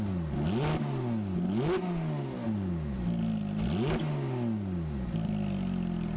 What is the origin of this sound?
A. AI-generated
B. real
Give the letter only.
B